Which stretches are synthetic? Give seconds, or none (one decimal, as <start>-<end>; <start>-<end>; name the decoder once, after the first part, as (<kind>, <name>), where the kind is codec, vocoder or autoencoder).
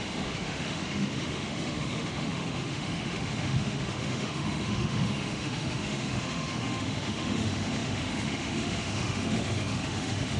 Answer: 0.0-10.4 (autoencoder, DAC-VAE)